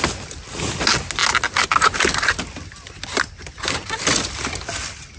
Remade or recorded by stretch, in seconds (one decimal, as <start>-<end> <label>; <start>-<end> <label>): 0.0-5.2 recorded